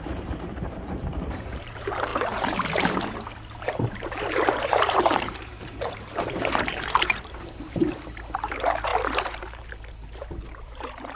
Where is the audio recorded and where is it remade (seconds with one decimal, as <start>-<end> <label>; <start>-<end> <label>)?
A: 0.0-7.8 remade; 7.8-8.4 recorded; 8.4-11.2 remade